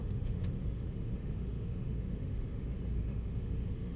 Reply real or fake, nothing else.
fake